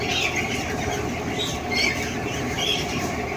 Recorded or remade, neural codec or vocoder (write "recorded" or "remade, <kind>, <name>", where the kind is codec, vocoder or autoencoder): recorded